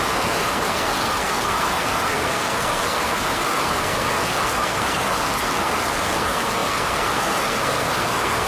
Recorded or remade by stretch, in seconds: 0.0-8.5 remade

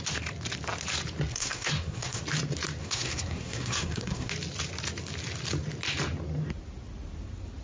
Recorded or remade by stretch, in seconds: 0.0-1.3 recorded; 1.3-2.2 remade; 2.2-2.8 recorded; 2.8-4.3 remade; 4.3-7.6 recorded